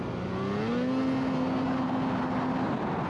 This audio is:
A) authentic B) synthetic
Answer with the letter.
A